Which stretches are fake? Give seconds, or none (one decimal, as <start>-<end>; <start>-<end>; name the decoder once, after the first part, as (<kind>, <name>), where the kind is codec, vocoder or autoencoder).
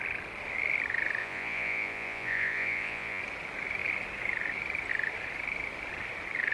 1.2-3.2 (vocoder, Vocos)